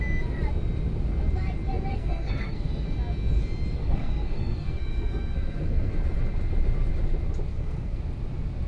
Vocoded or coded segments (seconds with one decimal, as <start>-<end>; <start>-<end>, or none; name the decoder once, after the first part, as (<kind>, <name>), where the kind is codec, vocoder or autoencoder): 1.9-2.7 (codec, SNAC); 3.8-5.9; 7.5-8.0